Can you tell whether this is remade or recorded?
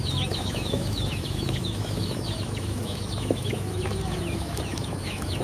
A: remade